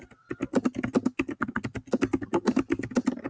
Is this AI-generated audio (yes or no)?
no